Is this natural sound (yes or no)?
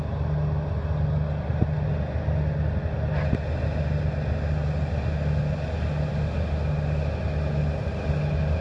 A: yes